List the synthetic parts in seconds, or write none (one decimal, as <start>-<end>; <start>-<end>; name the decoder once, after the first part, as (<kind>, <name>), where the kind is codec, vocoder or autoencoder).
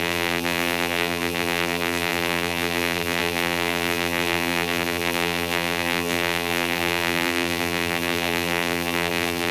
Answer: 0.0-9.5 (vocoder, BigVGAN v2)